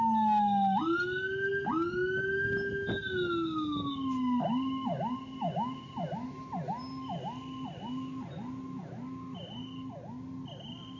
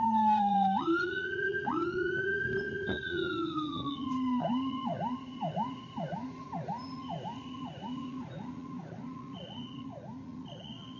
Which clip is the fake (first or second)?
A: second